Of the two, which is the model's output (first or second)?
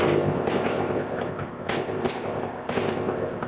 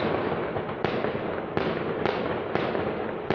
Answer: first